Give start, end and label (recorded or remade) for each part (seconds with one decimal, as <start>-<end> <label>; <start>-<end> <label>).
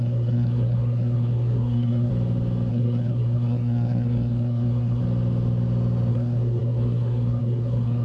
0.0-2.1 remade; 2.1-2.7 recorded; 2.7-5.0 remade; 5.0-6.1 recorded; 6.1-8.0 remade